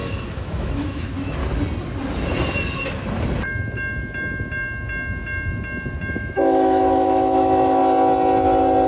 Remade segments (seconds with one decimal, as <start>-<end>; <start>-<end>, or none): 0.0-1.4; 6.1-7.8